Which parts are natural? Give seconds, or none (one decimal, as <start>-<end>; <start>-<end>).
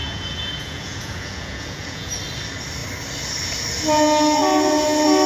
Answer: 2.1-5.3